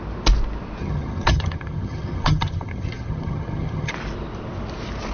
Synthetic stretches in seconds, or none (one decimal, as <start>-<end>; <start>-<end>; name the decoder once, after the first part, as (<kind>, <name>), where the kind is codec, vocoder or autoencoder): 0.8-3.9 (vocoder, HiFi-GAN)